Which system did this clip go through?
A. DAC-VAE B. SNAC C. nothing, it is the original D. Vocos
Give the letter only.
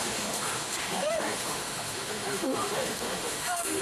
A